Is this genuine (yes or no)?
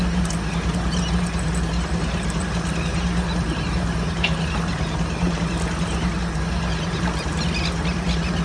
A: yes